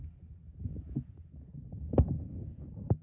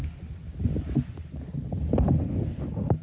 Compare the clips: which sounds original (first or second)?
second